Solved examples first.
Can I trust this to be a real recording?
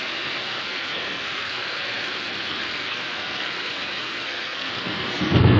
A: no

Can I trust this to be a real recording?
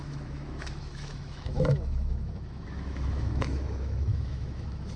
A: no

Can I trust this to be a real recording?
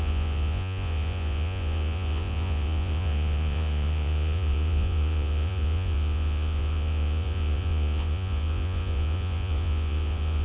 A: no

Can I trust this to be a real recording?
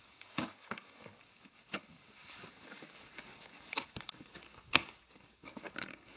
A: no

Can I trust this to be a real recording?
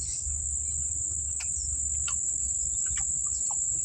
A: yes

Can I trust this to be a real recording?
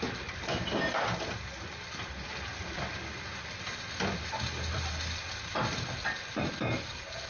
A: no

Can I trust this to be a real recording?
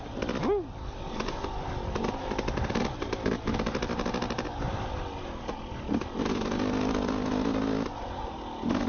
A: yes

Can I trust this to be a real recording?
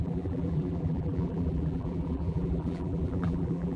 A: no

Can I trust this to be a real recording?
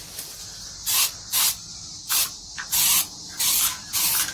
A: yes